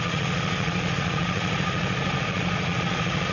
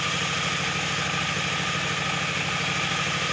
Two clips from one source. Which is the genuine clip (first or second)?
second